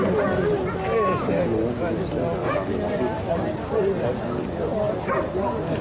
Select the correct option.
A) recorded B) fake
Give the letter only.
A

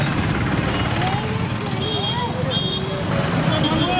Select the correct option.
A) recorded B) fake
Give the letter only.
A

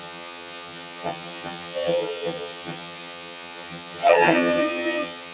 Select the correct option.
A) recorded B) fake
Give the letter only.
B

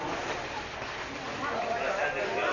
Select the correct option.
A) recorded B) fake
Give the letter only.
A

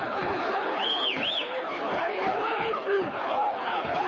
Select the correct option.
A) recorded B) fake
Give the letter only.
B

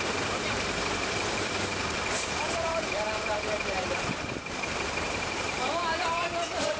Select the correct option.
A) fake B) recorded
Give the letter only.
A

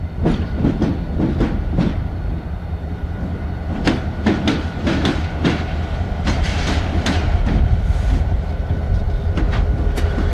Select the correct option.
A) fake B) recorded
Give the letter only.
B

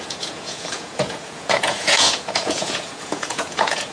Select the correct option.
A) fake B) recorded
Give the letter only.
A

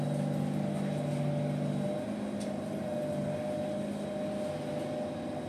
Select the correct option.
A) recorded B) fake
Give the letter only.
A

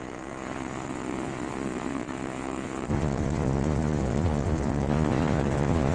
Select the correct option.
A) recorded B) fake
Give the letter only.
B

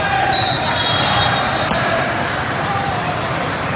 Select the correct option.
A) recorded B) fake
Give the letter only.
B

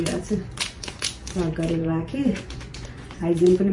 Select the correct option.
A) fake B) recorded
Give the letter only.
A